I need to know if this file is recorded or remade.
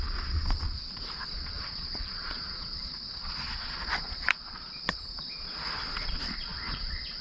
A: remade